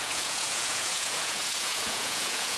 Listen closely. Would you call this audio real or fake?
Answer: fake